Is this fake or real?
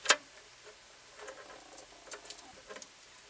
real